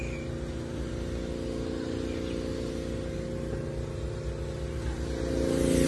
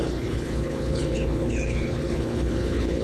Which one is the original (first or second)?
first